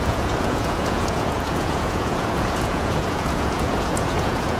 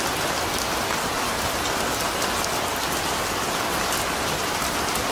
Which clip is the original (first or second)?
second